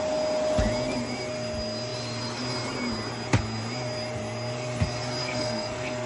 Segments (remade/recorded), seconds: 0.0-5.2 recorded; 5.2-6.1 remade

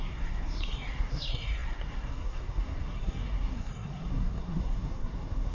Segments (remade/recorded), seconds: 0.0-5.5 remade

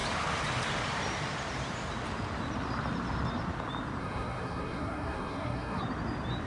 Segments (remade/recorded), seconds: 0.0-4.0 recorded; 4.0-5.8 remade; 5.8-6.5 recorded

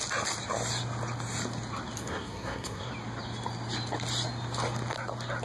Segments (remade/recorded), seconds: 0.0-2.0 recorded; 2.0-2.9 remade; 2.9-5.4 recorded

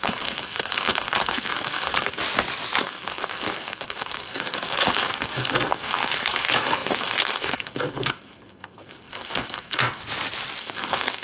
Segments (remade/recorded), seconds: 0.0-2.2 remade; 2.2-2.8 recorded; 2.8-10.0 remade; 10.0-10.6 recorded; 10.6-11.2 remade

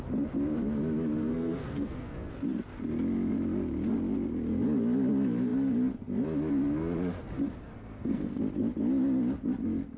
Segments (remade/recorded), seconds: 0.0-1.3 recorded; 1.3-2.3 remade; 2.3-7.7 recorded; 7.7-8.4 remade; 8.4-10.0 recorded